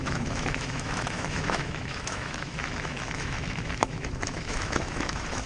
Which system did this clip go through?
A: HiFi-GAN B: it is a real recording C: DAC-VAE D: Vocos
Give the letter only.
C